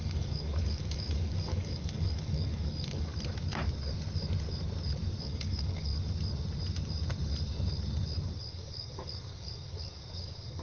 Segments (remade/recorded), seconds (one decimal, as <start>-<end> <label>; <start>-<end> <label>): 0.0-3.1 remade; 3.1-5.2 recorded; 5.2-5.9 remade; 5.9-8.5 recorded; 8.5-10.6 remade